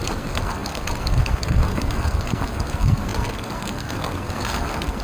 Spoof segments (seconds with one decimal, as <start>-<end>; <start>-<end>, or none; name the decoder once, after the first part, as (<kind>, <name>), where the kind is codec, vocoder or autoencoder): 0.0-5.0 (codec, SNAC)